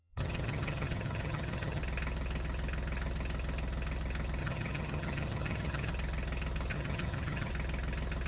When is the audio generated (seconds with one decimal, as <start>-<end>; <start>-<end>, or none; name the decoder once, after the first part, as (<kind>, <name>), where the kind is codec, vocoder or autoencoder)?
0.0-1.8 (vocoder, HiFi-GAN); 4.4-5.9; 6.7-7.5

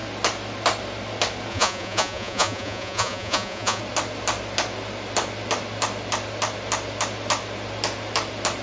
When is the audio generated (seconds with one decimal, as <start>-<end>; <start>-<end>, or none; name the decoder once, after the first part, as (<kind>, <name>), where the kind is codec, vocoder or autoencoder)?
1.5-3.8 (vocoder, Vocos)

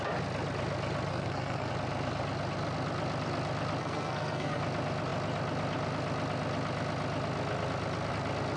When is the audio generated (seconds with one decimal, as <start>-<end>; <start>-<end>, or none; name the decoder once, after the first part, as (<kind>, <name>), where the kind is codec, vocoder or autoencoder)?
1.1-1.7 (codec, SNAC); 3.8-4.6

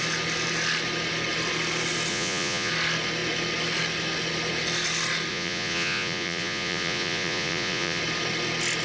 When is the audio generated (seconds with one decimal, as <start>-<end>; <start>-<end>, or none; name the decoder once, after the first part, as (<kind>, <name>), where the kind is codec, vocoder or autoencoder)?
2.1-2.7 (vocoder, Vocos); 5.3-8.0

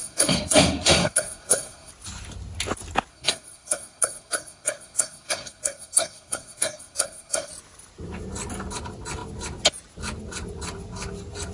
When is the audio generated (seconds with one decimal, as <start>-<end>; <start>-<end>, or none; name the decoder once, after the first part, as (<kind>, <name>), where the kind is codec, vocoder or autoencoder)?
0.0-1.9 (codec, SNAC); 3.1-7.5

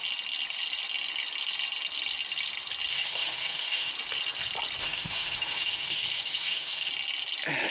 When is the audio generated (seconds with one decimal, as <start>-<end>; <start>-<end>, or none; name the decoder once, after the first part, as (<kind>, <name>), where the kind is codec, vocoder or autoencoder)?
2.9-3.9 (autoencoder, DAC-VAE); 4.8-6.9

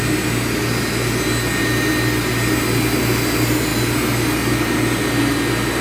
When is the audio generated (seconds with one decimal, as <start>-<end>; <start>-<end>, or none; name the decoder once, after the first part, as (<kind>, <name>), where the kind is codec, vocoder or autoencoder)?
none

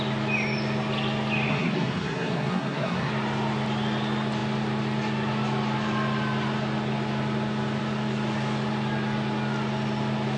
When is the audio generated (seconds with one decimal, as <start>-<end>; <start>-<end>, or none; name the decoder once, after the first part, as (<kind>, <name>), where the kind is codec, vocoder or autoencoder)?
1.5-3.1 (codec, SNAC)